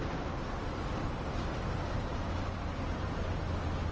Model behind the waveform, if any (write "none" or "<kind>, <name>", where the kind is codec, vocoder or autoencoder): none